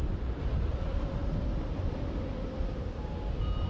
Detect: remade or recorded recorded